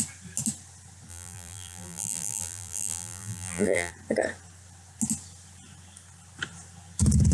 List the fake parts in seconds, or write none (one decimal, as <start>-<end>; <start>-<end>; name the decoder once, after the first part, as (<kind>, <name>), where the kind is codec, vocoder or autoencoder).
1.1-3.9 (vocoder, BigVGAN v2)